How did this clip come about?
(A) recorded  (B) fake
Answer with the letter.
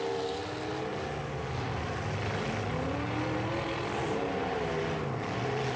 A